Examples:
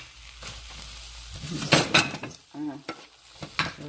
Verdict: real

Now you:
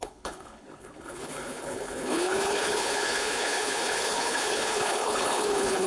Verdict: fake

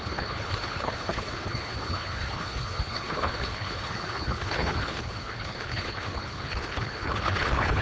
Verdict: fake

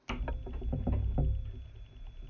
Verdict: real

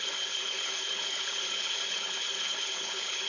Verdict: fake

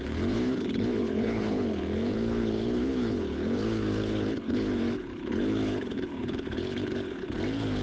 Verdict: fake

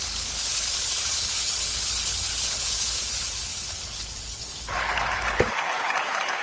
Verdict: fake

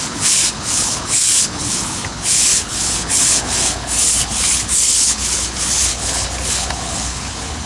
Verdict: fake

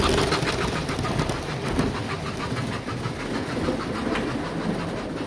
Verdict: real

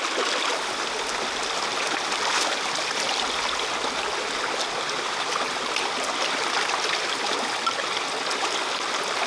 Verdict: real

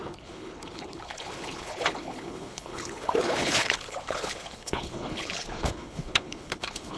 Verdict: fake